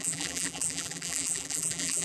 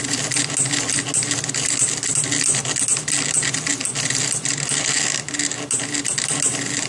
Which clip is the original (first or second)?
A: second